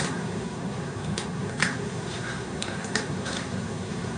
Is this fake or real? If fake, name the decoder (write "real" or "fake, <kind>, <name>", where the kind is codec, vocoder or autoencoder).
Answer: fake, codec, SNAC